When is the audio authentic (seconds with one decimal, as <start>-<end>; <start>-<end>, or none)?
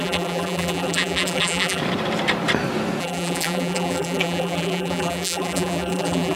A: 1.8-3.0